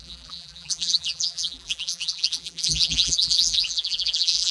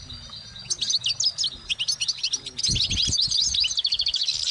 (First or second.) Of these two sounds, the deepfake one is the first